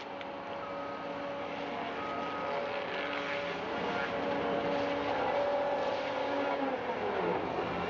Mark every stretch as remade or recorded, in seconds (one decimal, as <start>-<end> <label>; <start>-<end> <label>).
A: 0.0-6.2 recorded; 6.2-6.7 remade; 6.7-7.9 recorded